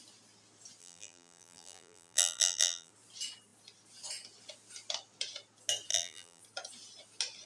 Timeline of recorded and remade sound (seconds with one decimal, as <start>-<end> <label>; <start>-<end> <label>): 0.0-0.8 recorded; 0.8-2.9 remade; 2.9-5.9 recorded; 5.9-6.4 remade; 6.4-7.5 recorded